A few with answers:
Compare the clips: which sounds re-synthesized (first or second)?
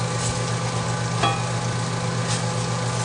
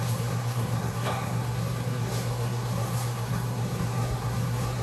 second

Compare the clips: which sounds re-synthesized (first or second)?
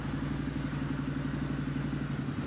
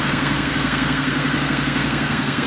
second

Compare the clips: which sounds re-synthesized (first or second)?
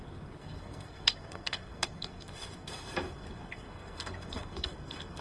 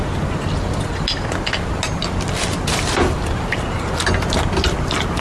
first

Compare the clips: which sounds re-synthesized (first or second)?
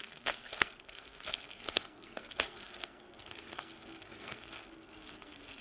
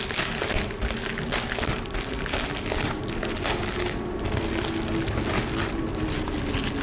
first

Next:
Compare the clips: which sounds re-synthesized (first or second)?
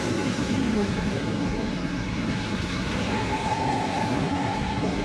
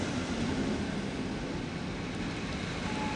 first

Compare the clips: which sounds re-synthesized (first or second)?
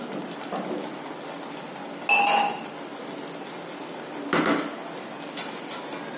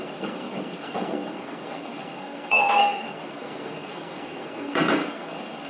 second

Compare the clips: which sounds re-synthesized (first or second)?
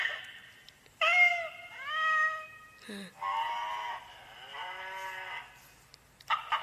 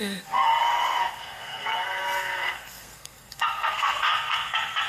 second